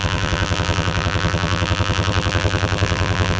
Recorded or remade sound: remade